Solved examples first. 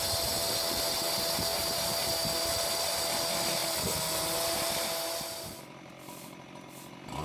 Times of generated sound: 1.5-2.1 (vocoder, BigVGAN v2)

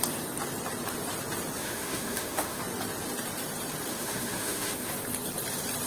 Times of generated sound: 1.6-2.6 (autoencoder, DAC-VAE); 3.9-4.9

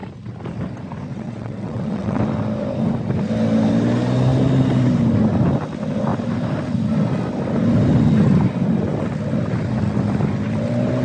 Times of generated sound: 1.1-2.2 (vocoder, WaveNeXt)